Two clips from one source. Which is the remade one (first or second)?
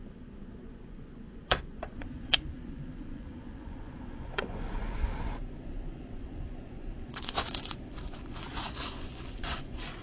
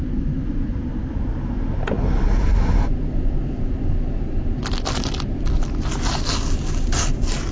first